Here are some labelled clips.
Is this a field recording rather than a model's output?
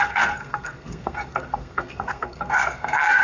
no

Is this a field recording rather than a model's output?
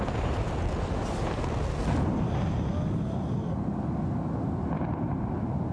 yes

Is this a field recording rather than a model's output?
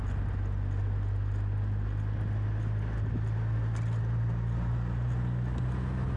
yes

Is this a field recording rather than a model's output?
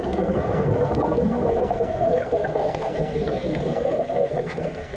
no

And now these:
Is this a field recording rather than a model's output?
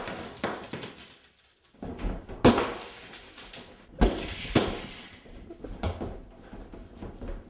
yes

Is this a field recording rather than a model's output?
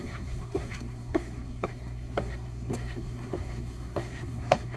no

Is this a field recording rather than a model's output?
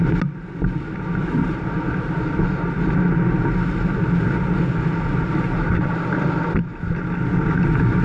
yes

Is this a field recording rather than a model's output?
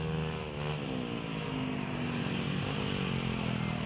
yes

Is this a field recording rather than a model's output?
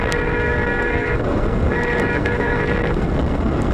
no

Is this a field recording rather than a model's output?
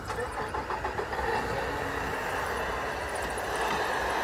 yes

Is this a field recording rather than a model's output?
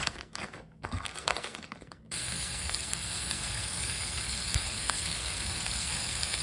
no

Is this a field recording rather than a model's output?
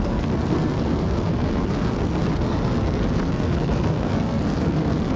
no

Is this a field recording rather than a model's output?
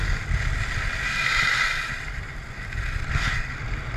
yes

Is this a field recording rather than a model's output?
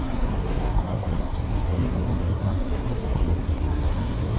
no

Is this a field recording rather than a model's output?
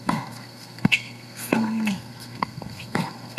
no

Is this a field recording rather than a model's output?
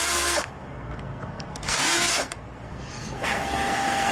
no